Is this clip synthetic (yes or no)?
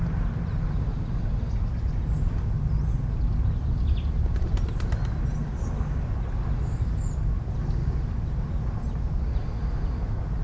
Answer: no